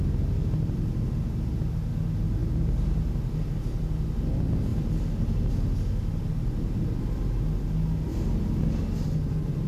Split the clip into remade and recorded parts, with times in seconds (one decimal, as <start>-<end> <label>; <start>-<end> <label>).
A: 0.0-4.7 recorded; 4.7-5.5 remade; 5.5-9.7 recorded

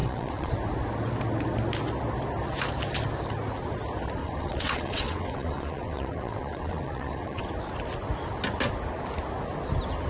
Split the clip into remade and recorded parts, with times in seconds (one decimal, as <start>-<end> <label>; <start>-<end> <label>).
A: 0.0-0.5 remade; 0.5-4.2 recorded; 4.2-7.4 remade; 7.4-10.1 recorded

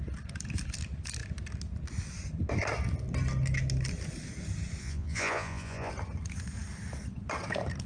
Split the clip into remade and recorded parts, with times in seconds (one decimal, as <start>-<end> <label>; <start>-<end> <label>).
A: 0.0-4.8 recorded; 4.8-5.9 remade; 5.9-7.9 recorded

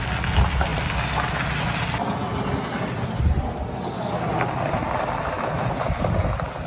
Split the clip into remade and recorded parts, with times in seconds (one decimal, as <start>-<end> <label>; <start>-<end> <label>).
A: 0.0-6.7 recorded